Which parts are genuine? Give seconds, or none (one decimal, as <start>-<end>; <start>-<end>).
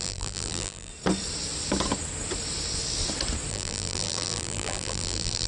0.9-3.5